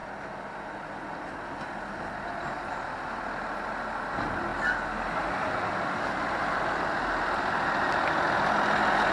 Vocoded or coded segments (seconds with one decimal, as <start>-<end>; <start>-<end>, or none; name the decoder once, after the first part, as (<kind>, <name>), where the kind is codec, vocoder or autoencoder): none